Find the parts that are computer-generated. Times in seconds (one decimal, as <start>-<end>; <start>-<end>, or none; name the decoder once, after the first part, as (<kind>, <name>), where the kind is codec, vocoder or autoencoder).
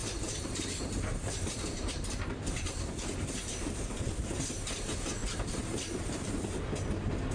0.0-4.4 (vocoder, BigVGAN v2); 5.2-6.6